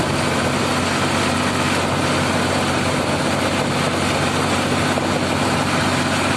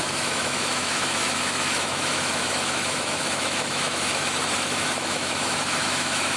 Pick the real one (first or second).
first